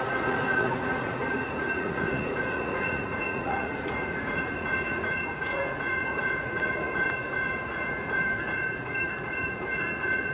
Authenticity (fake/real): fake